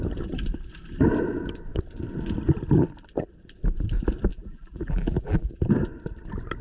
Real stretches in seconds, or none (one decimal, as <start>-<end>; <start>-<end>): 0.0-4.3; 5.5-6.6